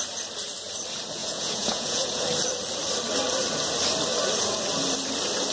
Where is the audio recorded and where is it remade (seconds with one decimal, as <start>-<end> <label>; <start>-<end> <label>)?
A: 0.0-1.2 recorded; 1.2-2.2 remade; 2.2-5.5 recorded